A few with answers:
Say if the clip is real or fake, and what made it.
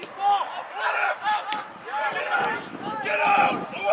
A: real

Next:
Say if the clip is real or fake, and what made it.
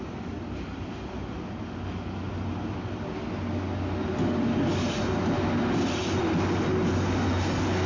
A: real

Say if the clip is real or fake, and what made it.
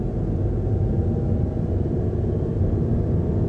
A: real